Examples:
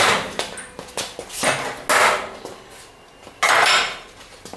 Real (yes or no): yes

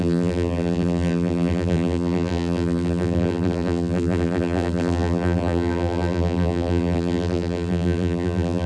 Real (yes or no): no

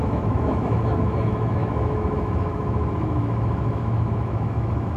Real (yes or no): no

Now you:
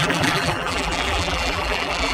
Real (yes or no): no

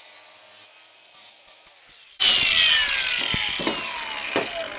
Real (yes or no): yes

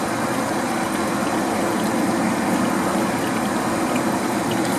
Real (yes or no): yes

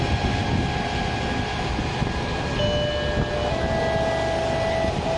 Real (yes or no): yes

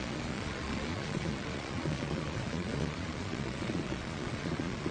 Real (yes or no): no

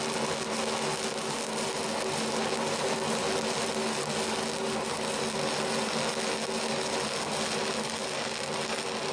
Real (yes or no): yes